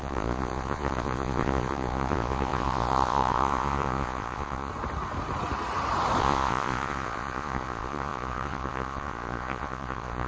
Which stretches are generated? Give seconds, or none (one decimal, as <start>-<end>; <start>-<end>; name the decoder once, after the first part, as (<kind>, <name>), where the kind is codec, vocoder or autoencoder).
0.0-4.7 (vocoder, Vocos); 6.2-10.3